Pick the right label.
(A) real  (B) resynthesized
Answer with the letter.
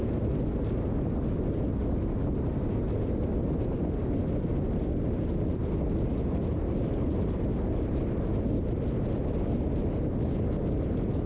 A